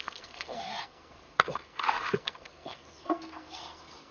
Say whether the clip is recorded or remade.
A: remade